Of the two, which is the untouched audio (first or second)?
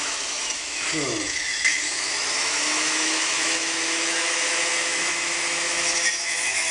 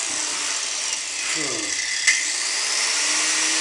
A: second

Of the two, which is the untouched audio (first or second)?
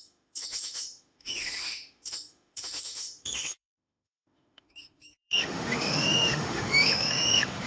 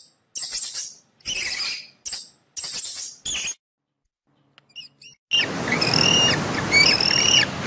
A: second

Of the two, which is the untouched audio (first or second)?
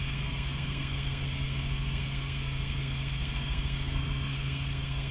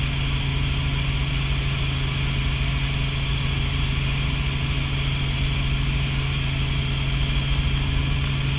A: second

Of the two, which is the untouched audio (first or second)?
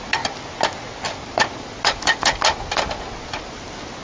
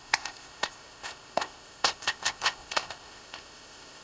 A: first